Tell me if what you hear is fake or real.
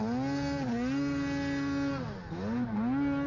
real